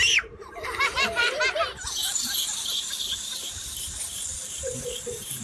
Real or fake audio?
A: fake